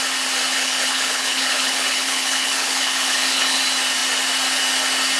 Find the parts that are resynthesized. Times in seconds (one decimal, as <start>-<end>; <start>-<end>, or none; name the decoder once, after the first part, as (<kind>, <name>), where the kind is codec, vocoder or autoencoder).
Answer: 0.5-3.6 (codec, HILCodec)

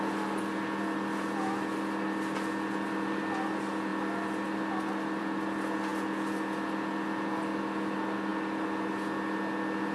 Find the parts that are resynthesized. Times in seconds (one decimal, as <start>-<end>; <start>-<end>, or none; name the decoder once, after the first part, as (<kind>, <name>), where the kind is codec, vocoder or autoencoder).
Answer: none

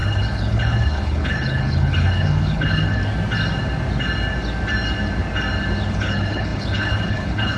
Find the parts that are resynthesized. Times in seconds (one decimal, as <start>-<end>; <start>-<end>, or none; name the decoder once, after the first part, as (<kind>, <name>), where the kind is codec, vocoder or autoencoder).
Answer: 0.0-3.0 (codec, HILCodec); 5.9-7.6

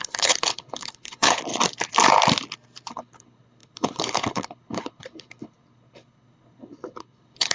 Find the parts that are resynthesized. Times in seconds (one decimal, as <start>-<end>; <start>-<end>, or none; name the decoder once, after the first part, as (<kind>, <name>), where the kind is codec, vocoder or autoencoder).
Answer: 0.0-1.5 (codec, HILCodec); 2.9-7.5